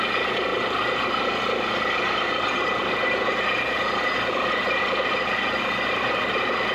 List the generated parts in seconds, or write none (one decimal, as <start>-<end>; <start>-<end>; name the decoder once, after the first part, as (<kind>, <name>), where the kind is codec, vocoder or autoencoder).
none

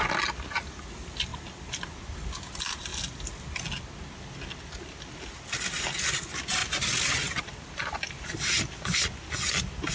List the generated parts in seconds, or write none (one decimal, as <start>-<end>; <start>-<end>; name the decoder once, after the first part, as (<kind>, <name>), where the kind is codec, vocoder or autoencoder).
none

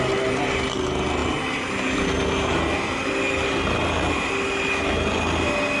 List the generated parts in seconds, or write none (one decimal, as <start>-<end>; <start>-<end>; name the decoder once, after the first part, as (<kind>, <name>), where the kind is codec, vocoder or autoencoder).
none